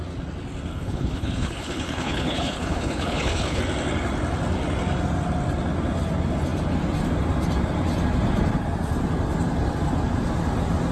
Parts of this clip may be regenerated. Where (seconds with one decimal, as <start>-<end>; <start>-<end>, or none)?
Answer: 0.7-3.6